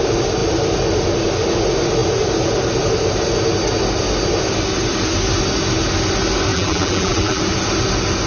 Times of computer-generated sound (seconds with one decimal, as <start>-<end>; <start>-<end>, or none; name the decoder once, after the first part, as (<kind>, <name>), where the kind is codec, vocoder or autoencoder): 6.5-7.4 (vocoder, BigVGAN v2)